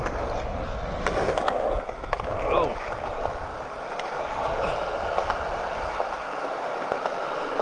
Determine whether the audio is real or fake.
real